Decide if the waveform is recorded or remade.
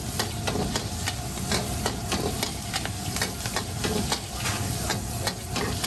recorded